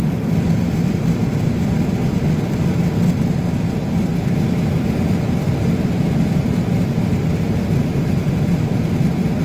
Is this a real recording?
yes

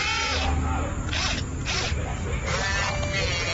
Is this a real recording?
yes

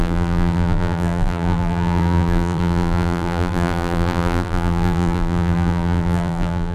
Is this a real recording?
no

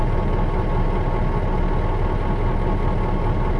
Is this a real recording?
yes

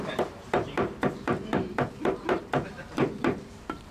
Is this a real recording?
no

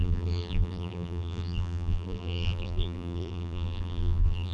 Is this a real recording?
no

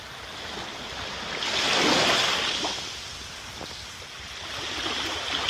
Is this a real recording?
yes